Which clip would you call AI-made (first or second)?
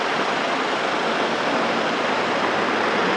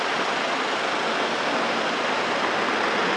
first